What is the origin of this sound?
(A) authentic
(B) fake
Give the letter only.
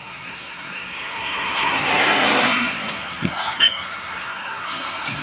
B